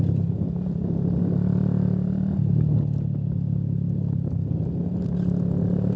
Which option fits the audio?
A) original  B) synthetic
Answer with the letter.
A